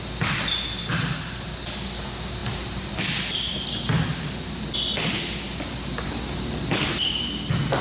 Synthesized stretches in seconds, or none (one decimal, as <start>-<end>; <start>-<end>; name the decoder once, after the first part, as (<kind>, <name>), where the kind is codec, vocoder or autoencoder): none

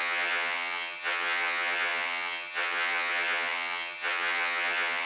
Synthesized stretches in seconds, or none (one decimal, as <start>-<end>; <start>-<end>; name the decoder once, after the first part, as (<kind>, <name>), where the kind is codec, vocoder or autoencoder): 0.0-5.1 (vocoder, HiFi-GAN)

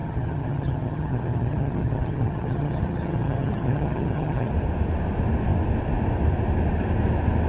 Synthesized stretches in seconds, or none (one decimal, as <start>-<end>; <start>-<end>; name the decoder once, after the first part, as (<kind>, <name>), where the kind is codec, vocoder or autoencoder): 0.0-4.5 (vocoder, HiFi-GAN)

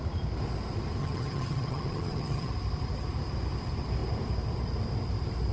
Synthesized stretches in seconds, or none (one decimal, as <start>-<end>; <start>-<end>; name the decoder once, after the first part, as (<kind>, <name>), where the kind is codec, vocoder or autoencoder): 1.0-2.5 (vocoder, HiFi-GAN)

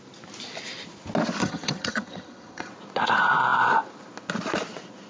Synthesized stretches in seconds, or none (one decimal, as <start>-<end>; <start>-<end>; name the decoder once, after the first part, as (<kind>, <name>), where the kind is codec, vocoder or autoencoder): 1.4-2.7 (vocoder, HiFi-GAN)

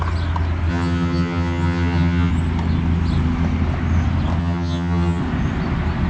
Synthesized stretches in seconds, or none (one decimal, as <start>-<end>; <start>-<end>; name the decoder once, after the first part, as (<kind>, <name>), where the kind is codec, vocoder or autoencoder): 0.7-2.3 (vocoder, HiFi-GAN); 4.4-5.2

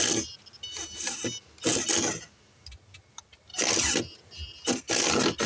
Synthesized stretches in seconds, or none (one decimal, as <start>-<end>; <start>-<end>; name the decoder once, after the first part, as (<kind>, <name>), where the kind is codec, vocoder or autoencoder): none